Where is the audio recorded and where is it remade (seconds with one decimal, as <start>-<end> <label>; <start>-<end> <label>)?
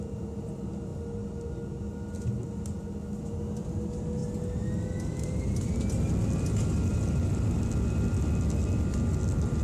0.0-6.9 recorded; 6.9-7.7 remade; 7.7-9.6 recorded